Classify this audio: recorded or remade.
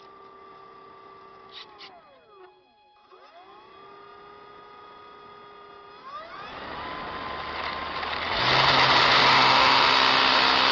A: recorded